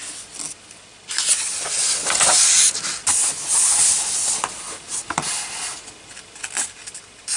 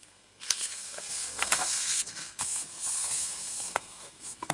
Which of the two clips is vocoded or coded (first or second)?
second